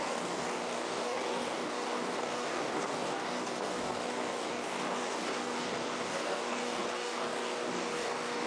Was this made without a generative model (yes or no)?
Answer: no